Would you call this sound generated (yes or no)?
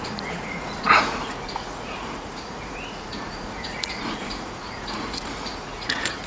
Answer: yes